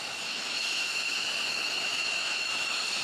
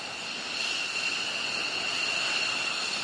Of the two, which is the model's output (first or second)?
first